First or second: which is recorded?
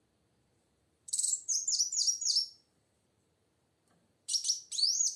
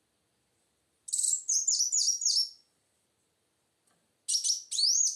second